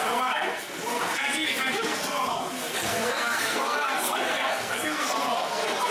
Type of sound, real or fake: fake